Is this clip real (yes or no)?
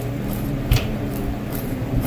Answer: no